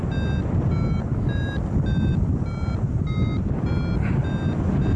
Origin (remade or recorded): recorded